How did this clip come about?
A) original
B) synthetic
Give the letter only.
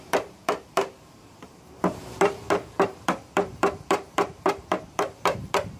B